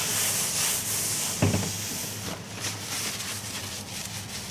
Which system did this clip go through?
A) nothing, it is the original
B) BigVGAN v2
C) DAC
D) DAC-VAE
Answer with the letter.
A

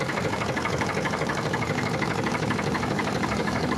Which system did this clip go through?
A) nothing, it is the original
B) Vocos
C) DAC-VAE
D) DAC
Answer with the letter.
D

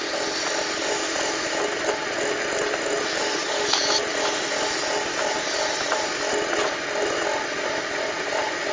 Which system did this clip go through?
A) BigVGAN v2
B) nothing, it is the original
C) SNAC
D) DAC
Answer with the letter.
B